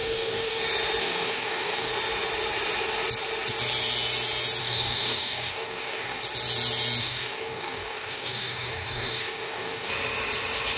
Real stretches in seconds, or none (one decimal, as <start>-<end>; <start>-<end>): 0.6-1.0; 1.9-4.6; 6.2-7.0; 9.9-10.8